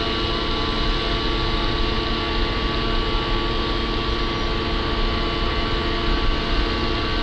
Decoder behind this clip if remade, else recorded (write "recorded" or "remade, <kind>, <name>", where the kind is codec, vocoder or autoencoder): recorded